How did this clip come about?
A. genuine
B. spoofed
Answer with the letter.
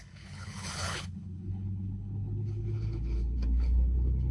B